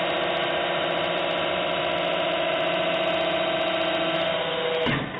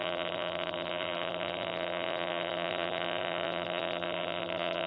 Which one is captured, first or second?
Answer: first